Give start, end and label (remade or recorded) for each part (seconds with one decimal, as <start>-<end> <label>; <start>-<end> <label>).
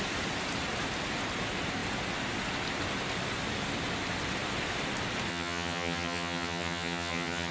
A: 0.0-5.3 recorded; 5.3-7.5 remade